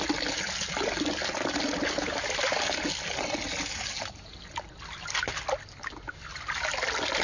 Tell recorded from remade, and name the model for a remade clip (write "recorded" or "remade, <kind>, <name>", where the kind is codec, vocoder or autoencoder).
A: recorded